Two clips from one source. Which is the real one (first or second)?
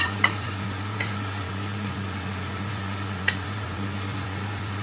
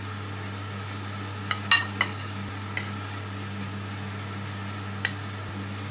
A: second